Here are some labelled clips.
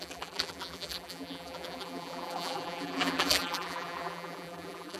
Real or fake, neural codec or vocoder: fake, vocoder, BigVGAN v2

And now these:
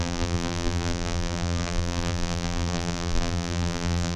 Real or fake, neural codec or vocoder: fake, vocoder, BigVGAN v2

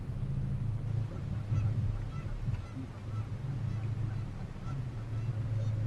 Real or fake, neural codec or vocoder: real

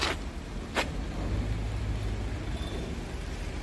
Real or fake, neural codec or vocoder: real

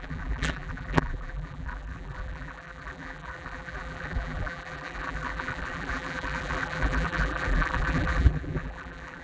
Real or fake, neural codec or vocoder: fake, vocoder, BigVGAN v2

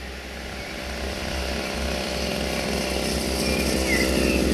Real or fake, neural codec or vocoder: real